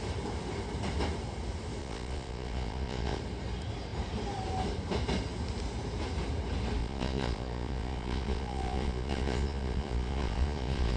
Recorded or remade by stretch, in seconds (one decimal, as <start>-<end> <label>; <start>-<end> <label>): 0.0-1.8 recorded; 1.8-3.2 remade; 3.2-6.8 recorded; 6.8-11.0 remade